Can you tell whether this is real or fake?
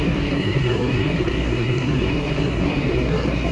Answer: fake